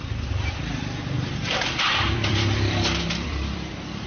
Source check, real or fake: fake